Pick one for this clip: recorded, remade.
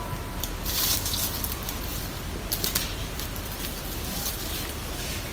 recorded